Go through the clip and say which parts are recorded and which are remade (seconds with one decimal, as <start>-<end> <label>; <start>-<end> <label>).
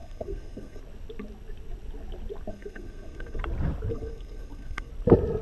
0.0-0.8 remade; 0.8-2.5 recorded; 2.5-3.4 remade; 3.4-3.9 recorded; 3.9-4.9 remade; 4.9-5.4 recorded